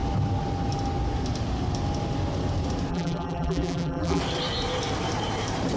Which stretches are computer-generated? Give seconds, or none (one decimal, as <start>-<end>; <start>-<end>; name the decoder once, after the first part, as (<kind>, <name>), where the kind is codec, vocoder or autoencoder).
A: 2.9-4.2 (vocoder, BigVGAN v2)